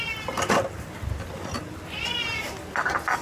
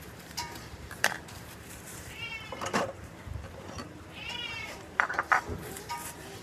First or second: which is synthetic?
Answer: second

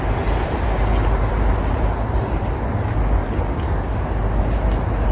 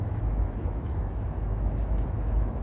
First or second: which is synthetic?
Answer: second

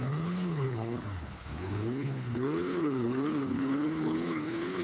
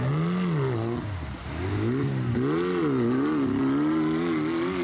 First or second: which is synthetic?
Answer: first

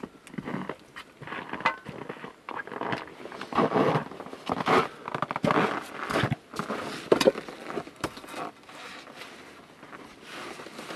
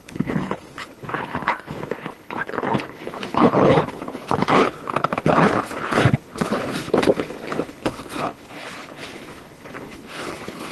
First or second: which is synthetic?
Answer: second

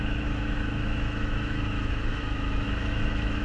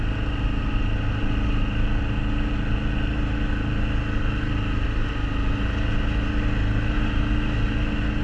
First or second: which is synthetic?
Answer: first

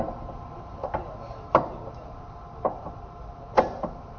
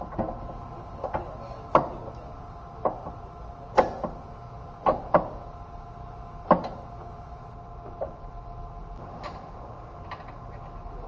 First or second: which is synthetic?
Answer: first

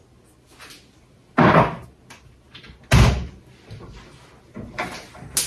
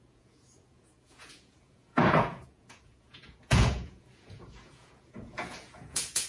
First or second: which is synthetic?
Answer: second